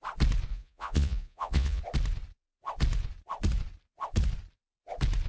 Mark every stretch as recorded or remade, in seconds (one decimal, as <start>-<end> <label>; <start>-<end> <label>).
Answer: 0.0-0.5 recorded; 0.5-1.8 remade; 1.8-5.3 recorded

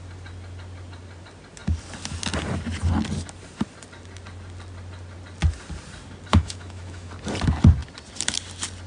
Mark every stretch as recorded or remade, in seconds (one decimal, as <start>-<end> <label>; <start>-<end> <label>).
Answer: 0.0-6.3 recorded; 6.3-7.1 remade; 7.1-8.9 recorded

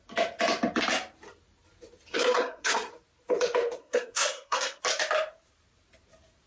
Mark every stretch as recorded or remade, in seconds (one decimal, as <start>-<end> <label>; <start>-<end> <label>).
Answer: 0.0-2.1 recorded; 2.1-2.9 remade; 2.9-3.8 recorded; 3.8-4.8 remade; 4.8-6.5 recorded

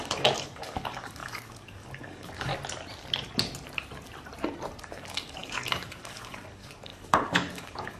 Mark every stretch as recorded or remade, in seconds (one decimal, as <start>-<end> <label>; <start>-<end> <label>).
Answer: 0.0-2.5 remade; 2.5-4.8 recorded; 4.8-8.0 remade

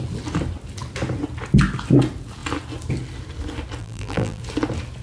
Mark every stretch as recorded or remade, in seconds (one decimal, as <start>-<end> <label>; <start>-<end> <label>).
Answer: 0.0-3.8 recorded; 3.8-4.4 remade; 4.4-5.0 recorded

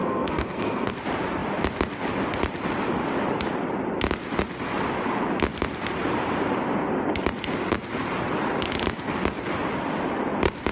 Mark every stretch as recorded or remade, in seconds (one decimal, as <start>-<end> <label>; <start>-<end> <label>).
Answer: 0.0-0.9 remade; 0.9-10.7 recorded

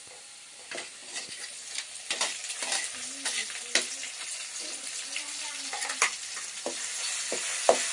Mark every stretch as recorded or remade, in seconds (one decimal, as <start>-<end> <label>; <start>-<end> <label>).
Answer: 0.0-3.4 recorded; 3.4-4.1 remade; 4.1-7.9 recorded

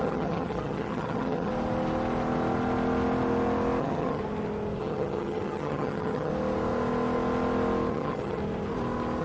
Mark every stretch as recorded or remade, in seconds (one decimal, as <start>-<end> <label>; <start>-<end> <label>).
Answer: 0.0-1.5 remade; 1.5-3.8 recorded; 3.8-4.2 remade; 4.2-4.8 recorded; 4.8-6.3 remade; 6.3-7.9 recorded; 7.9-8.4 remade; 8.4-9.2 recorded